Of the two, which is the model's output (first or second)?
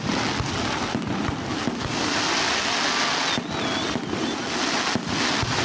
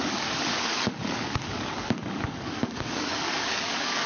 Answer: second